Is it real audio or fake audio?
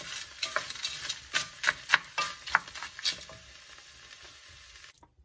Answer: real